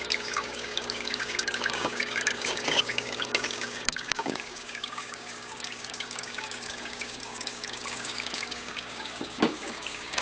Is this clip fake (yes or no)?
yes